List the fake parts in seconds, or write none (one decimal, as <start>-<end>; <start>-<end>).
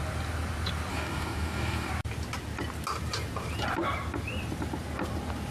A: 0.9-1.9